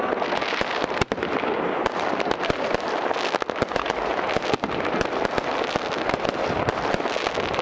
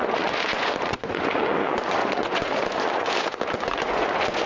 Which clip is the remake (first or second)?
second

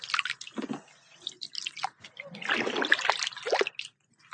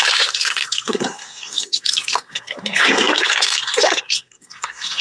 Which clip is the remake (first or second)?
second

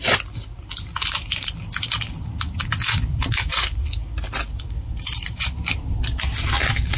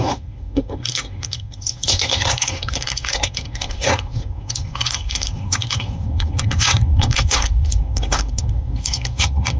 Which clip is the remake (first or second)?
second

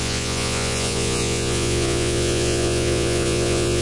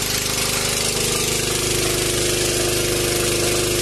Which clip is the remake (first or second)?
first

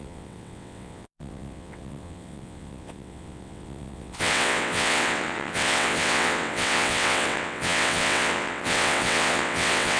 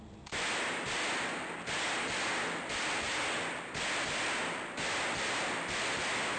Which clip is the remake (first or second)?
first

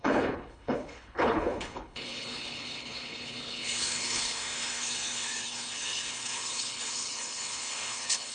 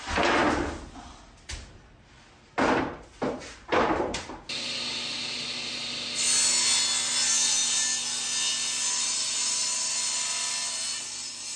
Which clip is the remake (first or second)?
first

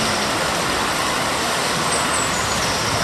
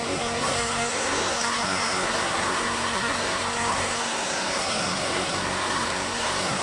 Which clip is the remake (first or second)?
second